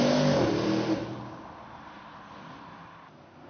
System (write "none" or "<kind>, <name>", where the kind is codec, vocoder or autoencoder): none